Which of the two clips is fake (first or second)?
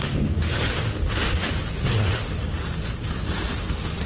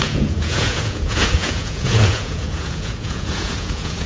second